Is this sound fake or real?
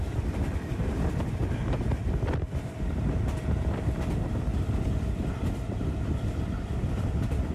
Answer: fake